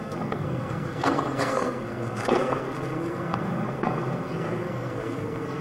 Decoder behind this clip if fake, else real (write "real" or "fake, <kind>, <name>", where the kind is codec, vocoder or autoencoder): fake, codec, SNAC